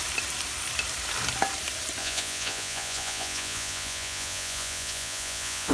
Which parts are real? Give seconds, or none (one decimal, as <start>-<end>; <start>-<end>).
0.0-2.0

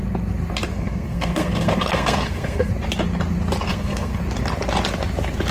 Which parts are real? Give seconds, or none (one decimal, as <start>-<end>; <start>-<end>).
0.0-0.7; 2.7-3.7; 4.2-5.5